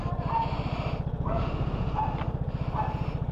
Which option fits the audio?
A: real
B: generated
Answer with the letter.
A